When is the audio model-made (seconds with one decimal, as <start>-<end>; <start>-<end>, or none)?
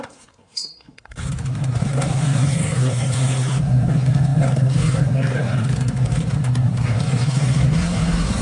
0.0-8.4